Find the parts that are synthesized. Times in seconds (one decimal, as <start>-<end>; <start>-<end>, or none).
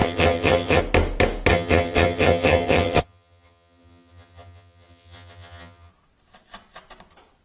0.0-0.8; 1.5-5.9